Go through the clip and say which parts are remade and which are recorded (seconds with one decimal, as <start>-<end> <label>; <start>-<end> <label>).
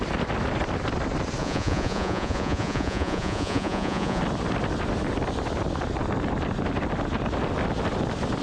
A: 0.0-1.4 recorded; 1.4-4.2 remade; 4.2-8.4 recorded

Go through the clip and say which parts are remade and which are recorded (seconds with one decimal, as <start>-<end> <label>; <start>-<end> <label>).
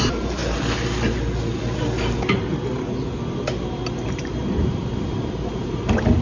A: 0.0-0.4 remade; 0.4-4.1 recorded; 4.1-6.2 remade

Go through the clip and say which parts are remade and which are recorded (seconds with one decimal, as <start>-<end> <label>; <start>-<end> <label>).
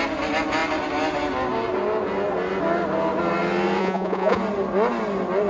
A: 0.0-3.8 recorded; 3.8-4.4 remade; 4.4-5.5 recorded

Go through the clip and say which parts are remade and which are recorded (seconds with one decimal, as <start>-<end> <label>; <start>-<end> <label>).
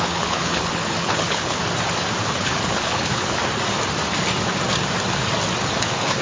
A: 0.0-1.6 remade; 1.6-2.3 recorded; 2.3-3.4 remade; 3.4-5.8 recorded; 5.8-6.2 remade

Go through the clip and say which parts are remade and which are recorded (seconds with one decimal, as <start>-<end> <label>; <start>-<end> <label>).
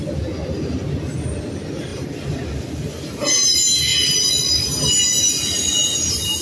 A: 0.0-6.4 recorded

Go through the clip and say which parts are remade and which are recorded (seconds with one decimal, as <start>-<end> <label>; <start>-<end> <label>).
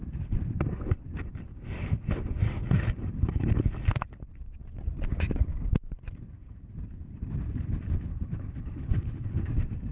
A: 0.0-8.1 recorded; 8.1-9.5 remade; 9.5-9.9 recorded